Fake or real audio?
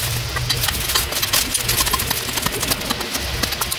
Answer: real